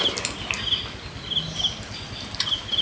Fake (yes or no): no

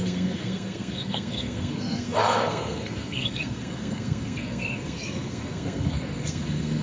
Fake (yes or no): yes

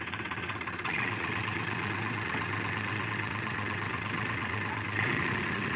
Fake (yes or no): yes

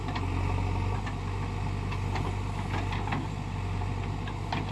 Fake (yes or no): no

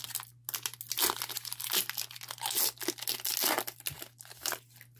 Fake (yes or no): no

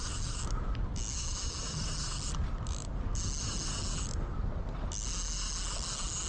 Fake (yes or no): no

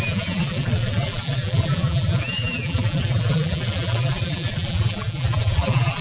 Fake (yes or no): yes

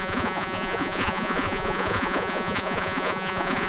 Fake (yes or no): yes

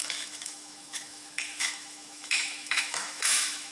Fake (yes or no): yes